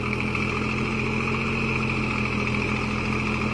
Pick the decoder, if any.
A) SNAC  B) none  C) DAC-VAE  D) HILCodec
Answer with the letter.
B